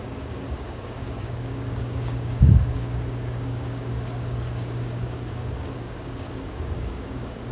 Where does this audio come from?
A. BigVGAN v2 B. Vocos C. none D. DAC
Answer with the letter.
D